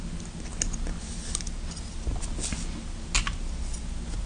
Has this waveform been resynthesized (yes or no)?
no